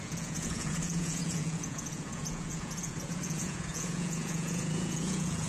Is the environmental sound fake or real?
fake